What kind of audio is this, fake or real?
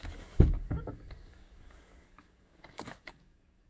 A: fake